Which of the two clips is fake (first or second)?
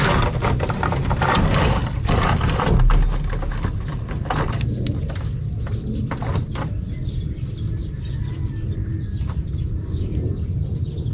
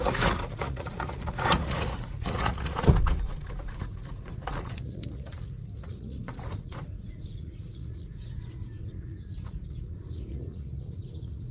second